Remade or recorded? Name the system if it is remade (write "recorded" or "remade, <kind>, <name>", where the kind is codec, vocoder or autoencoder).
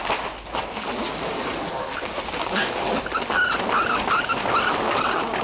recorded